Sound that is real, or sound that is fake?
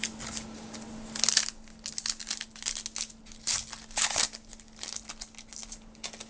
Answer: real